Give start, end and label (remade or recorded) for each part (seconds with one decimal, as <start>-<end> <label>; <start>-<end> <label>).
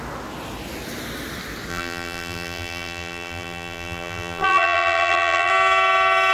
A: 0.0-1.7 recorded; 1.7-5.5 remade; 5.5-6.3 recorded